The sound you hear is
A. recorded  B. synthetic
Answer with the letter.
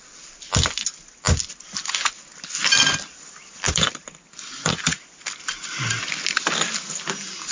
A